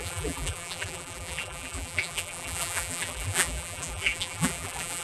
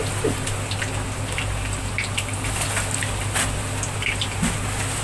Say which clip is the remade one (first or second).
first